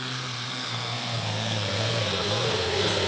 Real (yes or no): no